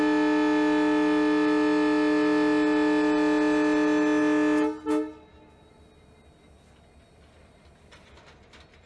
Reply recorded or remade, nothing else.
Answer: recorded